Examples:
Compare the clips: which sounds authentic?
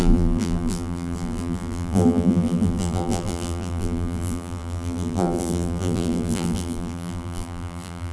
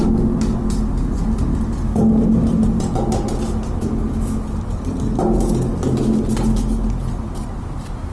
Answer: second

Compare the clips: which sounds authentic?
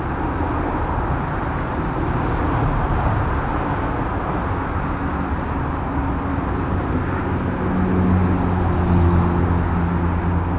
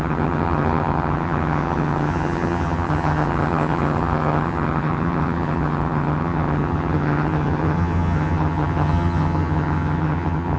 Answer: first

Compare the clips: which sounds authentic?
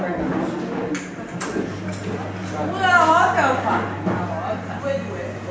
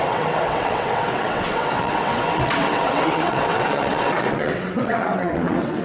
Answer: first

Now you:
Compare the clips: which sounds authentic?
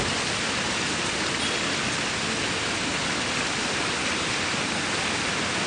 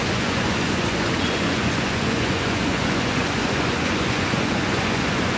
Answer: first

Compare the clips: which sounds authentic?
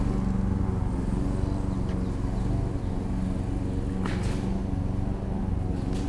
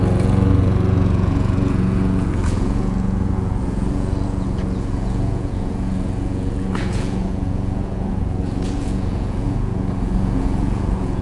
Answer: first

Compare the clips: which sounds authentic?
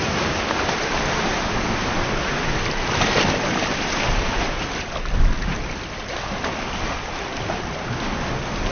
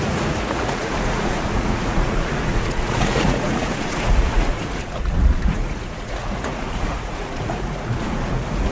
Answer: first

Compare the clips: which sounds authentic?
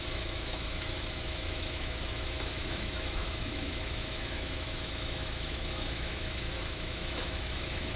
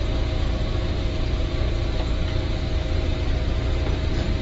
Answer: second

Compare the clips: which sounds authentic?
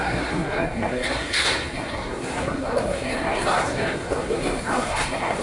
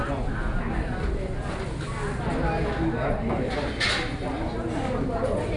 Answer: second